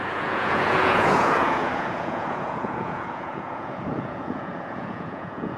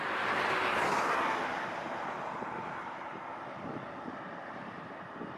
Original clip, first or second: second